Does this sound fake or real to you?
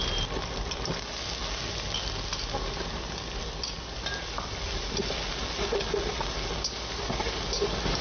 real